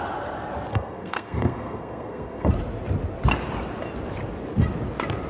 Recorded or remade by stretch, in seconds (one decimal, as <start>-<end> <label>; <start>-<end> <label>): 0.0-0.7 recorded; 0.7-2.5 remade; 2.5-5.3 recorded